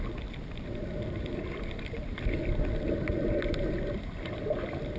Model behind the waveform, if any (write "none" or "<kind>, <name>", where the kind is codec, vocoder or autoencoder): none